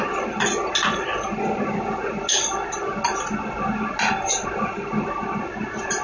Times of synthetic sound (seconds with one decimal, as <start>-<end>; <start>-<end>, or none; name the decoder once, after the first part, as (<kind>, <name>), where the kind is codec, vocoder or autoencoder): none